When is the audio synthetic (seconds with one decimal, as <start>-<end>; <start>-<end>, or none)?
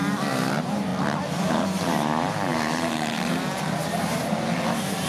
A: 0.5-0.9; 1.4-5.1